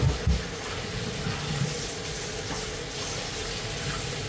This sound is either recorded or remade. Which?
recorded